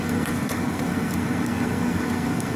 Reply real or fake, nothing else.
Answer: fake